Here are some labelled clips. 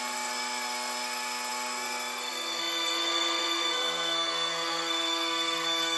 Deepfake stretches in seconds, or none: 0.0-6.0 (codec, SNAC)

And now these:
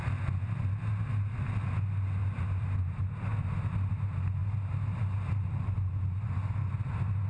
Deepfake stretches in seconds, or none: 2.2-3.0 (vocoder, BigVGAN v2)

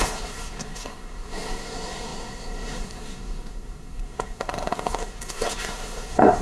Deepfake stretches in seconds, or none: 0.0-6.4 (codec, SNAC)

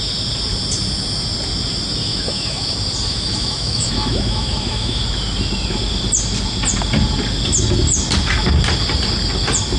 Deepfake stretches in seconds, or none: 2.1-2.7 (autoencoder, DAC-VAE); 3.1-5.0